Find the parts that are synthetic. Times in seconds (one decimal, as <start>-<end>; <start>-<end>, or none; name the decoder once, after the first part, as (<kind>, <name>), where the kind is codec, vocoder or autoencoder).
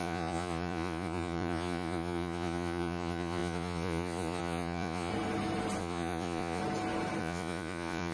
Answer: 0.0-5.1 (vocoder, Vocos); 5.8-6.6; 7.2-8.1